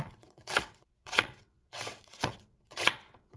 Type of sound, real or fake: fake